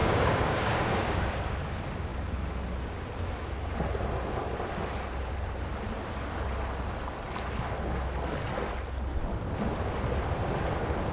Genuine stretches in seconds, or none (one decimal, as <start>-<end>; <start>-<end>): 1.5-11.1